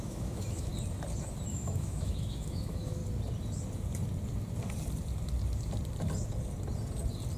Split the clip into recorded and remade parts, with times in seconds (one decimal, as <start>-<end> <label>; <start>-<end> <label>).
0.0-0.7 remade; 0.7-1.5 recorded; 1.5-3.0 remade; 3.0-7.4 recorded

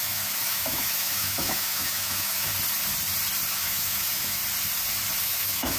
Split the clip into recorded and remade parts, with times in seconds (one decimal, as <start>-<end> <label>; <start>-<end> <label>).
0.0-2.5 remade; 2.5-3.5 recorded; 3.5-4.4 remade; 4.4-5.2 recorded; 5.2-5.8 remade

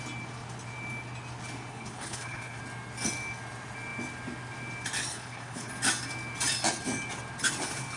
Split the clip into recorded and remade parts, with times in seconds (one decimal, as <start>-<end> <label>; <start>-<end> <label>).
0.0-1.7 recorded; 1.7-2.6 remade; 2.6-5.1 recorded; 5.1-5.7 remade; 5.7-8.0 recorded